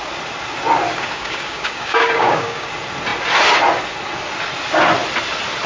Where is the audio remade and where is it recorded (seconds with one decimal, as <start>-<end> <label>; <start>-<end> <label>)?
0.0-0.9 recorded; 0.9-2.7 remade; 2.7-5.7 recorded